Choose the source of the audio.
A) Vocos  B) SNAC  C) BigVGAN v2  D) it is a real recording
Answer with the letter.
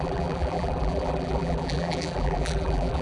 C